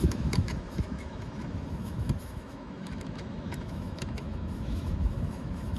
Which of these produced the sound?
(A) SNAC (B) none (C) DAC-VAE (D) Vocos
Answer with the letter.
C